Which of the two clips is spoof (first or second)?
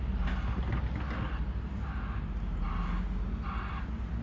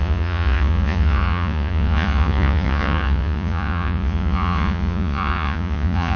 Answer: second